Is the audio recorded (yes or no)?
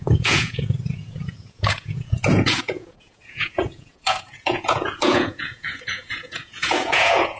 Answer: no